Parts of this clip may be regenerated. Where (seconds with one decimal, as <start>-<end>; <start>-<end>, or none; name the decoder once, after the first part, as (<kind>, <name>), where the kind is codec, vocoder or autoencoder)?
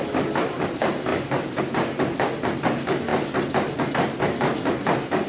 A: none